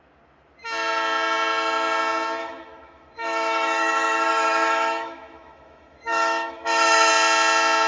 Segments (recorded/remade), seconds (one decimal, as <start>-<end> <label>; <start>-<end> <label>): 0.0-2.4 recorded; 2.4-7.1 remade; 7.1-7.9 recorded